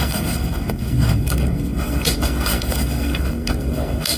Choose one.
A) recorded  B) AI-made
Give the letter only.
B